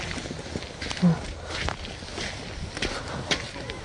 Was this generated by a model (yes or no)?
no